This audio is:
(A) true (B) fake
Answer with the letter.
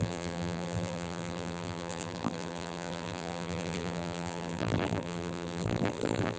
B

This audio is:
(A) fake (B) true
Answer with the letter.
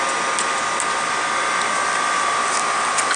B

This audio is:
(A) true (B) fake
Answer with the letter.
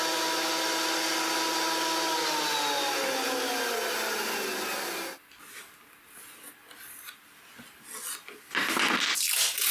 A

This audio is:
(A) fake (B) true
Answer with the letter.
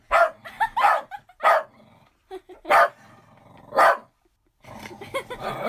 B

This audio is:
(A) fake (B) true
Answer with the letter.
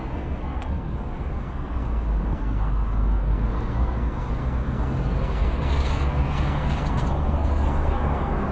A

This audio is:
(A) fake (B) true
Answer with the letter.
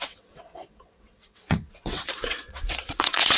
A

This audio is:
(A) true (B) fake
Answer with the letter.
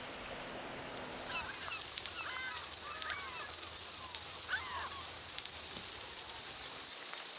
A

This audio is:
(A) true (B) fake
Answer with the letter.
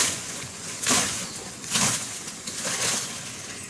B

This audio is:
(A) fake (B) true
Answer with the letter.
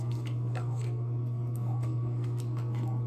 A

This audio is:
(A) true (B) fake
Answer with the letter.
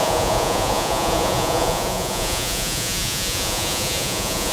B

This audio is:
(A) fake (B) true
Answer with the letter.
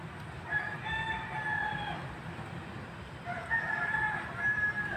B